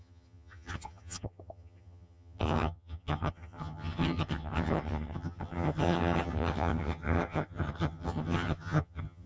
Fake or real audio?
fake